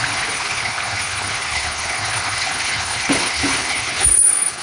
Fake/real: fake